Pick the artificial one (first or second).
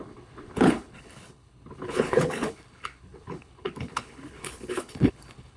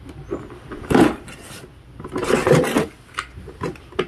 first